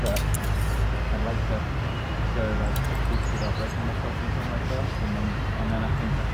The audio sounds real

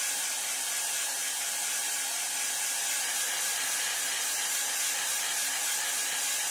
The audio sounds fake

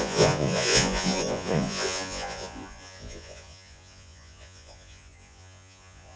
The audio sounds fake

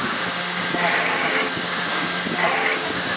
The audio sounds fake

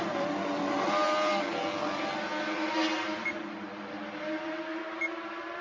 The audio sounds real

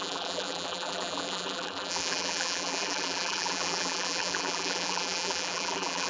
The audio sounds fake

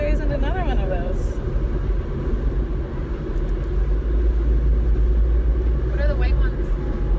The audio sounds real